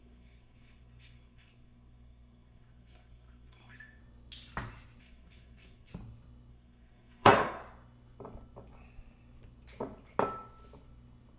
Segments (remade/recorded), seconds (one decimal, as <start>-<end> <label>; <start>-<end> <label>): 0.0-4.0 remade; 4.0-5.0 recorded; 5.0-5.9 remade; 5.9-6.5 recorded; 6.5-7.6 remade; 7.6-11.4 recorded